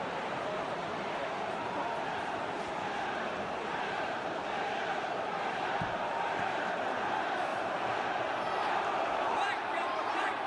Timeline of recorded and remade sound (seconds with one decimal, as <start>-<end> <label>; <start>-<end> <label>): 0.0-7.5 remade; 7.5-8.6 recorded; 8.6-10.5 remade